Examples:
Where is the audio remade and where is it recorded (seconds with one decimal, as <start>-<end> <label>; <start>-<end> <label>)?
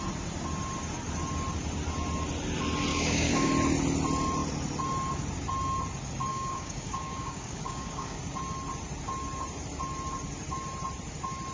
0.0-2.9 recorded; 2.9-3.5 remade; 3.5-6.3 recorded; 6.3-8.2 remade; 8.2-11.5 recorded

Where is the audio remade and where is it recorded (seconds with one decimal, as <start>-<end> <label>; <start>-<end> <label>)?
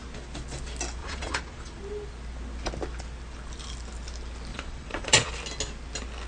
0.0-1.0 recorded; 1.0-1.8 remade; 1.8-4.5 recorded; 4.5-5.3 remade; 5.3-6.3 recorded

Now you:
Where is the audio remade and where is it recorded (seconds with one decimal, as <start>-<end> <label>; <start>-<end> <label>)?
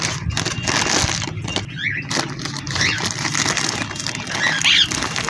0.0-5.3 recorded